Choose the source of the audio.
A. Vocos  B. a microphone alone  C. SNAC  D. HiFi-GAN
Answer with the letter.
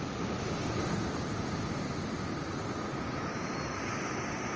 B